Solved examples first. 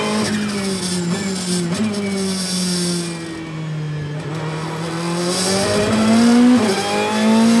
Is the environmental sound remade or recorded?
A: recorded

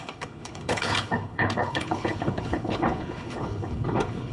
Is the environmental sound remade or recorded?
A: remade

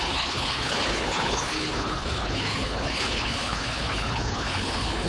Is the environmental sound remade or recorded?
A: remade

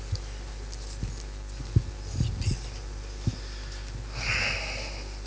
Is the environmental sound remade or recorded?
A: recorded